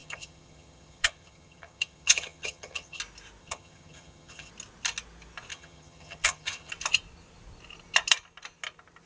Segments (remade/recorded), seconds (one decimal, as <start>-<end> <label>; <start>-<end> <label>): 0.0-3.0 remade; 3.0-3.4 recorded; 3.4-4.5 remade; 4.5-5.5 recorded; 5.5-6.7 remade; 6.7-9.1 recorded